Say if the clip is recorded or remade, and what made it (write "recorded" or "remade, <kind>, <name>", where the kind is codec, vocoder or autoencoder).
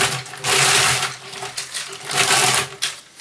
recorded